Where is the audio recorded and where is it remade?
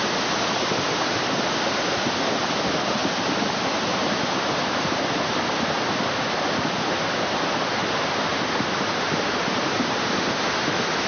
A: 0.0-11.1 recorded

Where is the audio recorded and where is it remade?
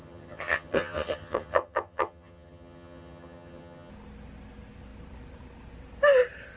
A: 0.0-3.9 remade; 3.9-6.6 recorded